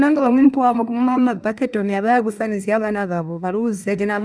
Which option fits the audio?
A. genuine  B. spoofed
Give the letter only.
B